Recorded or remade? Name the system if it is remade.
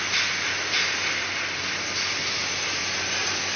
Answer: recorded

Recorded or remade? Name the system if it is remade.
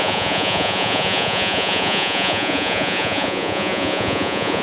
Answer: remade, vocoder, Vocos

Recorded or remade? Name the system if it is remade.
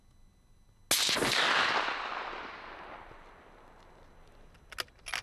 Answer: recorded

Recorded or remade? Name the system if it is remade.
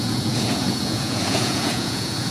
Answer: remade, vocoder, Vocos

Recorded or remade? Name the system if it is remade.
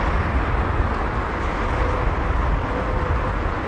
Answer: recorded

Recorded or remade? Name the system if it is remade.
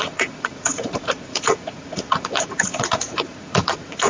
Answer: remade, vocoder, Vocos